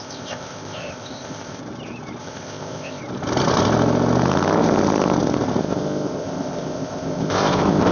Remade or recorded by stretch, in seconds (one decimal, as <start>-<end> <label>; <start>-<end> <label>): 0.0-1.6 remade; 1.6-2.2 recorded; 2.2-3.0 remade; 3.0-5.6 recorded; 5.6-7.9 remade